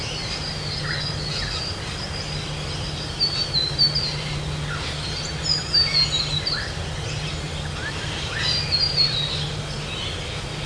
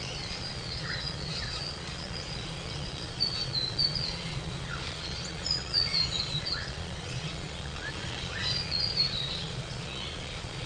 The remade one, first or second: second